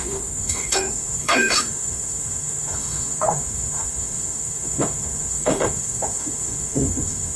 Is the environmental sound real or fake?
fake